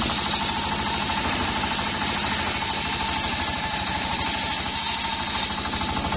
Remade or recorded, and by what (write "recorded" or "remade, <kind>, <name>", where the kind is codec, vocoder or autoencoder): recorded